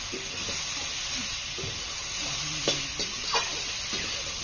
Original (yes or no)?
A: yes